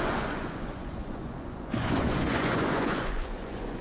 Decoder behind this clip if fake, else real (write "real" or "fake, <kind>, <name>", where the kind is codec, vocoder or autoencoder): fake, vocoder, Vocos